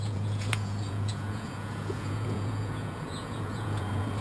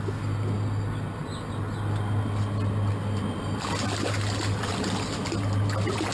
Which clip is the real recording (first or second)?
second